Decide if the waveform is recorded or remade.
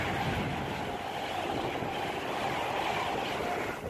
recorded